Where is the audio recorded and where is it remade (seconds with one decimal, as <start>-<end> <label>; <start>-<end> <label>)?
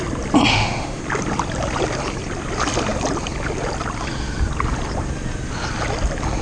0.0-0.5 recorded; 0.5-1.0 remade; 1.0-6.4 recorded